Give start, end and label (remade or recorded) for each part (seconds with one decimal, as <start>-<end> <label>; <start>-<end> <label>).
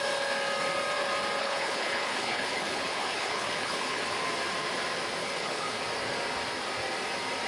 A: 0.0-1.4 recorded; 1.4-4.0 remade; 4.0-5.2 recorded; 5.2-5.8 remade; 5.8-7.5 recorded